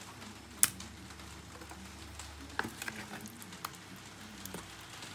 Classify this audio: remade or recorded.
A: recorded